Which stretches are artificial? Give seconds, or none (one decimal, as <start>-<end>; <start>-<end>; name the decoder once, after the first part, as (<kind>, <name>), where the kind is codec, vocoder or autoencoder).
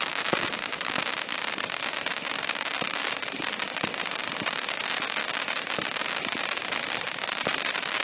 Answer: none